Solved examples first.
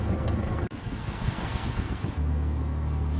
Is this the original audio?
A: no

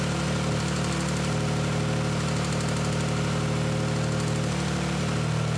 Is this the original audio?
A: yes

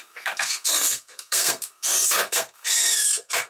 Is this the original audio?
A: no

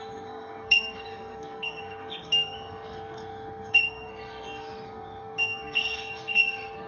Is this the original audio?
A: no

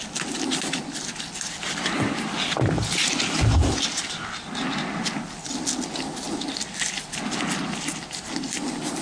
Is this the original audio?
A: yes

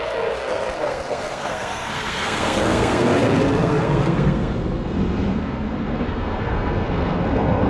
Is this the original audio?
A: no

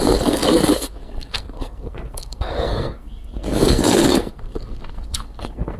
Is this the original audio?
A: no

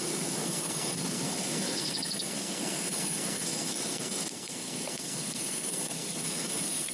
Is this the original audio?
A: no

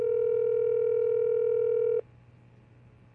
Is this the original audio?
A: yes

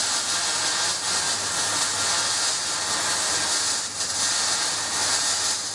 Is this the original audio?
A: yes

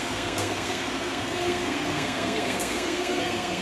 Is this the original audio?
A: no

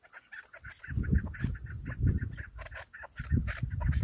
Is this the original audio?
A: yes